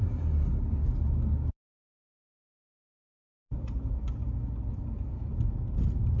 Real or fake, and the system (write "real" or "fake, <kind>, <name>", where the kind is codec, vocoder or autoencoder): real